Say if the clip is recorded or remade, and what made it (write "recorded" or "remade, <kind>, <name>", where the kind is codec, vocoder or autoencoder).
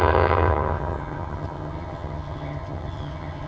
remade, vocoder, HiFi-GAN